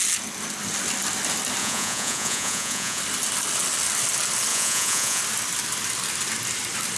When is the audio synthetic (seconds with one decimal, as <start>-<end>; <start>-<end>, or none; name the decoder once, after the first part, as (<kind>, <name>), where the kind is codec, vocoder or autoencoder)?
1.6-3.0 (vocoder, Vocos); 4.5-5.2